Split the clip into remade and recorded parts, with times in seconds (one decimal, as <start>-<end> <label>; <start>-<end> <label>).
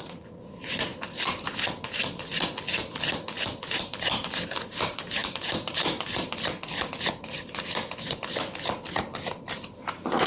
0.0-10.3 recorded